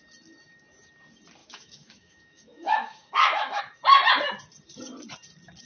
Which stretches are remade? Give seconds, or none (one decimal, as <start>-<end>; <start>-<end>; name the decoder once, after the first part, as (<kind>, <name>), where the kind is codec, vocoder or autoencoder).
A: 1.4-3.6 (autoencoder, DAC-VAE)